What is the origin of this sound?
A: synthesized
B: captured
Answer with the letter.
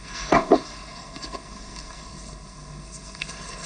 A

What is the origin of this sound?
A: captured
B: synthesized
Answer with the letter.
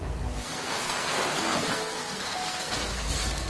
B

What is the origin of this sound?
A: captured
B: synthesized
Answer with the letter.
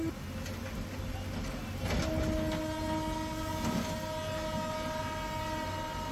A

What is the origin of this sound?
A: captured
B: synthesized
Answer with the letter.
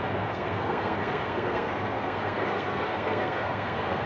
B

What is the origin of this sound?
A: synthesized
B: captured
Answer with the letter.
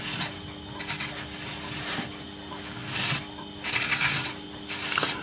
B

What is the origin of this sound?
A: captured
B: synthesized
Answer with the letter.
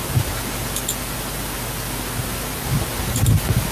A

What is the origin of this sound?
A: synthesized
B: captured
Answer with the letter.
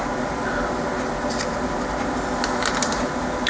B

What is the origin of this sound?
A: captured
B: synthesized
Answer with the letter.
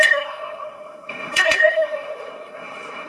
B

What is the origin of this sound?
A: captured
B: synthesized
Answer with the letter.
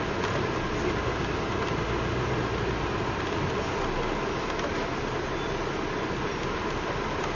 A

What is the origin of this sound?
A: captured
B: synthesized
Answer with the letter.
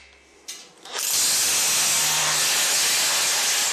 A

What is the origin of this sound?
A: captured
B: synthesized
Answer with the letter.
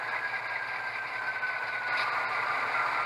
A